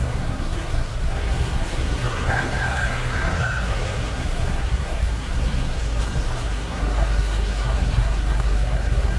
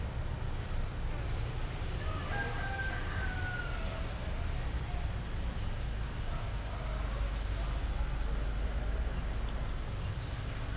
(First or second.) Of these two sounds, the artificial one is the first